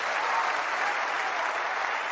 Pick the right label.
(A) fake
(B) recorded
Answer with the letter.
B